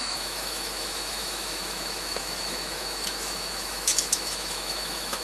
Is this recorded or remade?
remade